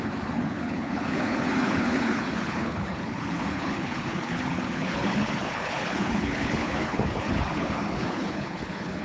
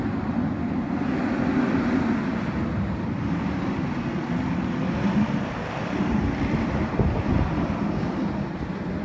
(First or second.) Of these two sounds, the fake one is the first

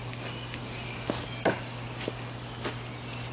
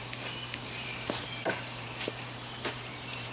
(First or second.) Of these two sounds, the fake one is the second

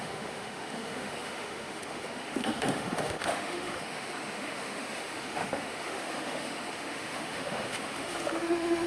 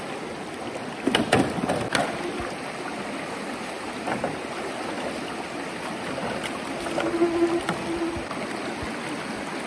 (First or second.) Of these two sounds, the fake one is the first